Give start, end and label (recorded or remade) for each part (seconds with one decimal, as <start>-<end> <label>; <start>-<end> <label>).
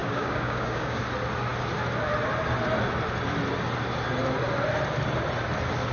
0.0-1.0 remade; 1.0-5.9 recorded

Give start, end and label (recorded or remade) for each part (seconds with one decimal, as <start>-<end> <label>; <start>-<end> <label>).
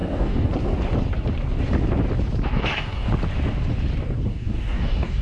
0.0-0.5 remade; 0.5-2.5 recorded; 2.5-3.1 remade; 3.1-4.3 recorded; 4.3-5.2 remade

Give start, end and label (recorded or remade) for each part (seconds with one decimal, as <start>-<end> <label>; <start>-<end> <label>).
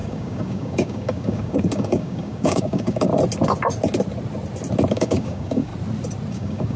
0.0-3.1 remade; 3.1-4.9 recorded; 4.9-5.7 remade; 5.7-6.3 recorded; 6.3-6.8 remade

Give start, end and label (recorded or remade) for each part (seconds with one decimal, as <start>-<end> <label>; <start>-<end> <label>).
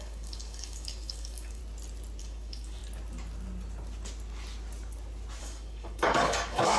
0.0-1.6 remade; 1.6-2.2 recorded; 2.2-2.8 remade; 2.8-5.4 recorded; 5.4-6.8 remade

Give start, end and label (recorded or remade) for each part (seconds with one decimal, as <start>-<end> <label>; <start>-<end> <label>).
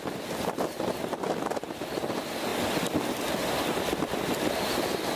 0.0-5.2 recorded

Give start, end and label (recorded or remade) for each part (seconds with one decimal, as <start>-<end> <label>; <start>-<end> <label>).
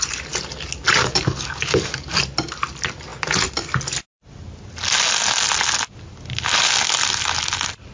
0.0-1.0 recorded; 1.0-2.2 remade; 2.2-7.9 recorded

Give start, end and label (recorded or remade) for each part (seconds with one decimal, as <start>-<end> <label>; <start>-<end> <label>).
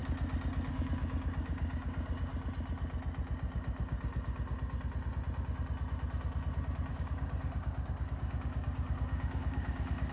0.0-0.7 recorded; 0.7-2.3 remade; 2.3-6.9 recorded; 6.9-10.1 remade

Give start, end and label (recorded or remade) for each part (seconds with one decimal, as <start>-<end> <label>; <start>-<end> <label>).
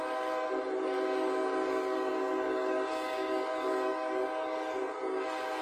0.0-5.6 remade